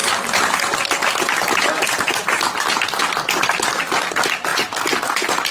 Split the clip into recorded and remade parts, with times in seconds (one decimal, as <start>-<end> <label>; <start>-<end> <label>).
0.0-3.0 recorded; 3.0-4.5 remade; 4.5-5.5 recorded